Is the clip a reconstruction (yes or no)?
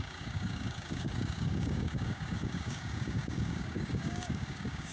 yes